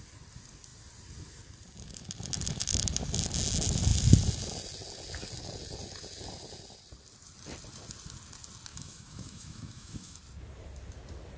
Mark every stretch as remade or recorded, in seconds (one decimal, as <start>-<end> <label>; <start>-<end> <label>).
0.0-8.7 recorded; 8.7-10.2 remade; 10.2-11.4 recorded